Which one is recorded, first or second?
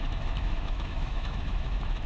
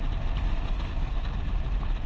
second